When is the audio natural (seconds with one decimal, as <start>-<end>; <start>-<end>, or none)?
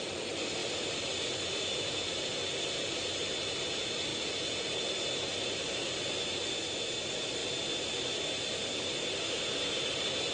0.0-10.3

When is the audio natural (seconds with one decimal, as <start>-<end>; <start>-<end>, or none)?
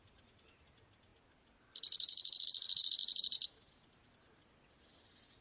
0.0-5.4